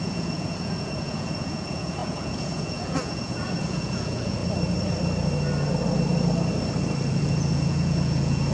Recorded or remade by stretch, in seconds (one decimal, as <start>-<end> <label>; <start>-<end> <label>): 0.0-4.4 remade; 4.4-7.1 recorded; 7.1-8.5 remade